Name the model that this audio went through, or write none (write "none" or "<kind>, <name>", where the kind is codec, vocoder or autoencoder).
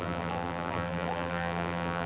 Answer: vocoder, BigVGAN v2